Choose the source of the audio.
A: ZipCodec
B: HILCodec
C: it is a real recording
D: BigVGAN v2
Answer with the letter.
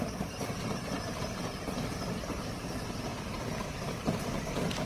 C